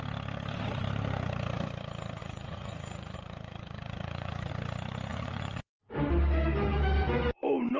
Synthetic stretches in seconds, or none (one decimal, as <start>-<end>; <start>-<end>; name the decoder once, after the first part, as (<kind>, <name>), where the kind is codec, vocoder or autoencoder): 2.2-4.5 (vocoder, Vocos); 5.1-5.9